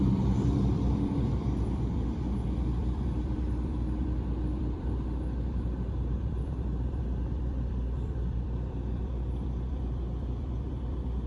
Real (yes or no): no